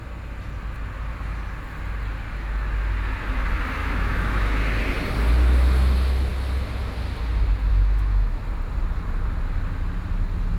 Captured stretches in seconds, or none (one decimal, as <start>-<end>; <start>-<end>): 0.0-3.8; 4.6-7.7; 8.4-10.6